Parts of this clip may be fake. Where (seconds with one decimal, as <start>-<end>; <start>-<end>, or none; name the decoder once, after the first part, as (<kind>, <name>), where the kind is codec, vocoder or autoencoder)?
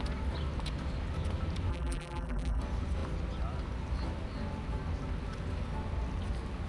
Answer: 1.7-2.6 (vocoder, BigVGAN v2)